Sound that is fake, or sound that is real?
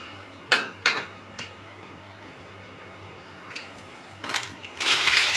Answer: fake